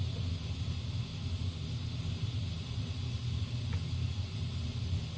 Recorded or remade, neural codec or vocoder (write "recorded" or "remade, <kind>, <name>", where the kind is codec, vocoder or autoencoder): recorded